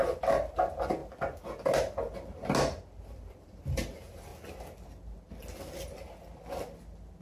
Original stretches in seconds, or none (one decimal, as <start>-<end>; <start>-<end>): 1.0-3.1; 4.3-7.2